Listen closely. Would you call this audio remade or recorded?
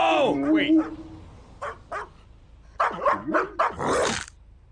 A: recorded